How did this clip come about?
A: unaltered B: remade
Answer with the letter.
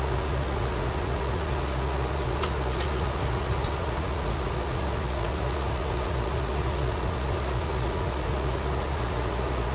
B